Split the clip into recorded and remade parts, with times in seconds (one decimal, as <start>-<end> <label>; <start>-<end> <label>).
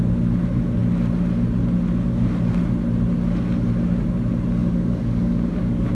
0.0-4.6 recorded; 4.6-5.9 remade